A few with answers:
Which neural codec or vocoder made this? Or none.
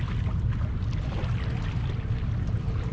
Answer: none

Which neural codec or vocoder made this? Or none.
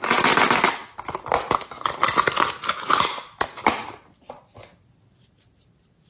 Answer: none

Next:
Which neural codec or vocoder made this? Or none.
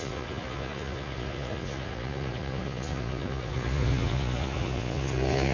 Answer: vocoder, Vocos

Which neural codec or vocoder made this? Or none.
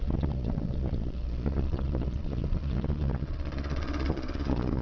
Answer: vocoder, Vocos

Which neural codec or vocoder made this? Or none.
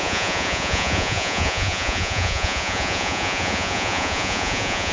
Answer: vocoder, Vocos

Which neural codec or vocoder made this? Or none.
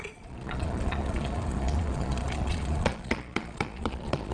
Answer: vocoder, Vocos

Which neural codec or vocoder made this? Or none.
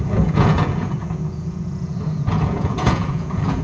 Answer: vocoder, Vocos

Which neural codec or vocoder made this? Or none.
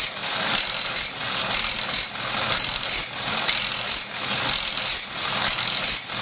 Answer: none